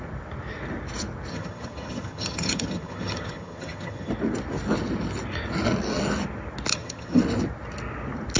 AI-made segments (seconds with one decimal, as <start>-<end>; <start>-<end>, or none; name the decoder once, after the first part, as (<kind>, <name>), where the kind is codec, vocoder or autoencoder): 1.3-4.1 (vocoder, HiFi-GAN); 6.7-7.2